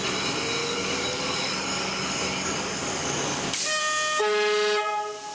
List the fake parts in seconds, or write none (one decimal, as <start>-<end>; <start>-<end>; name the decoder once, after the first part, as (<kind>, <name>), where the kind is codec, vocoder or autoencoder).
0.6-3.8 (codec, DAC)